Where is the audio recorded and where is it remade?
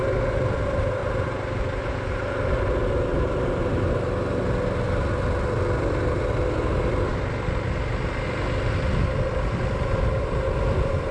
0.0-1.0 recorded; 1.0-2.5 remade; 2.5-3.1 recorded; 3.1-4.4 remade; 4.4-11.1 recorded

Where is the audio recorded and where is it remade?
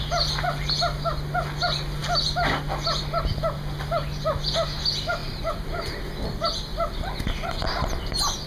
0.0-5.2 recorded; 5.2-6.1 remade; 6.1-6.7 recorded; 6.7-7.5 remade; 7.5-8.5 recorded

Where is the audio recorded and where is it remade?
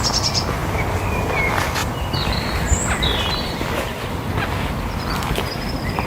0.0-6.1 recorded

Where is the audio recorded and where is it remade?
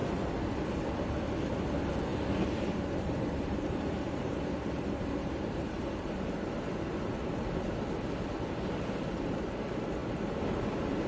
0.0-2.1 recorded; 2.1-6.7 remade; 6.7-11.1 recorded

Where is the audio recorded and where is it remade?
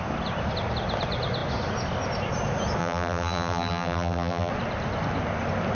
0.0-2.8 recorded; 2.8-4.5 remade; 4.5-5.7 recorded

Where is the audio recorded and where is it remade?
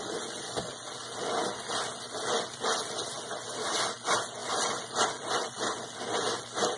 0.0-6.8 recorded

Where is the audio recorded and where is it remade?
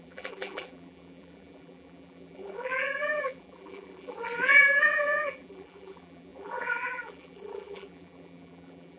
0.0-9.0 remade